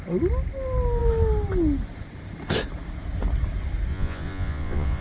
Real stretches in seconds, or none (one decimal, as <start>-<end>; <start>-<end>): 0.0-3.9